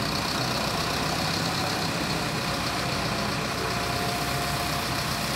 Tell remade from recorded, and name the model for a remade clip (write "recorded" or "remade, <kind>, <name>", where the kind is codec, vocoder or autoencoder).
recorded